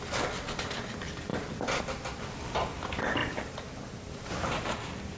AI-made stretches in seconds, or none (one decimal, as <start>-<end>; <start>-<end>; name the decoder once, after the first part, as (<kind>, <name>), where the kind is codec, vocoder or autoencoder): 3.2-4.3 (vocoder, BigVGAN v2)